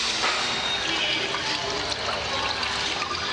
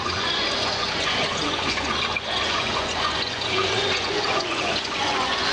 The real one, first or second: first